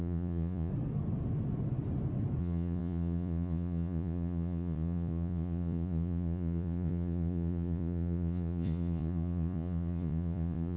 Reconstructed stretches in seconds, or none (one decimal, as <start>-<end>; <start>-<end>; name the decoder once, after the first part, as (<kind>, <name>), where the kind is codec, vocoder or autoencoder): 0.0-0.7 (vocoder, Vocos); 2.4-10.8